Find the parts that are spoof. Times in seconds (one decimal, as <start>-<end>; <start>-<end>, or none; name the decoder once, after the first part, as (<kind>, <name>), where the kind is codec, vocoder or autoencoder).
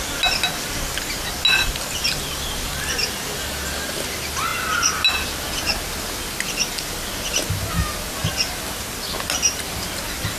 none